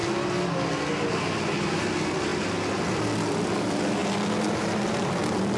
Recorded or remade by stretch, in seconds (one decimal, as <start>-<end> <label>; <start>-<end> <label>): 0.0-1.2 recorded; 1.2-2.3 remade; 2.3-3.4 recorded; 3.4-5.6 remade